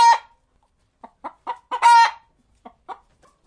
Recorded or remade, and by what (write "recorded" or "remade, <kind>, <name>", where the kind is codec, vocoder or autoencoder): recorded